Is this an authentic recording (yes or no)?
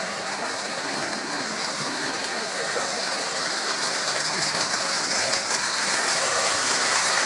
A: no